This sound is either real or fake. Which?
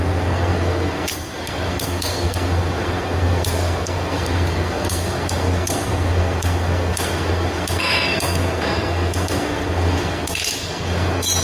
fake